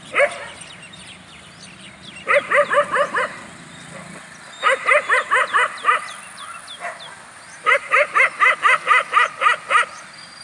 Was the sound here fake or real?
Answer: real